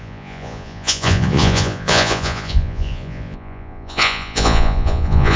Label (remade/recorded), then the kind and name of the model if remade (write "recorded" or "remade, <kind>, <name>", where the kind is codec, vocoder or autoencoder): remade, vocoder, Vocos